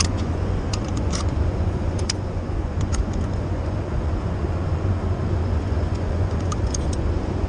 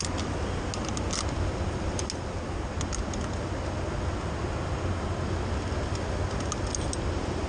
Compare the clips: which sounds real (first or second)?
second